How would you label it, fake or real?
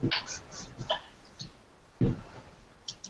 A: real